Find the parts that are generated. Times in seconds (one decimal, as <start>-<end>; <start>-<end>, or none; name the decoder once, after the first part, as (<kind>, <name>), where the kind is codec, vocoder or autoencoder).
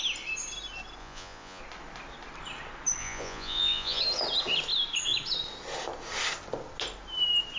1.0-1.6 (vocoder, Vocos); 3.0-4.0